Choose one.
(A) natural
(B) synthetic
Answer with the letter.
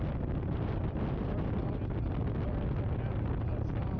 A